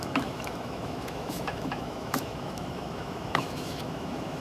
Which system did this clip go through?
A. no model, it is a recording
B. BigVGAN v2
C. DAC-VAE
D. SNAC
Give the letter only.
C